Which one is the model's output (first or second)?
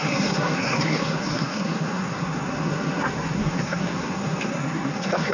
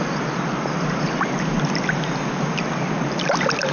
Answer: first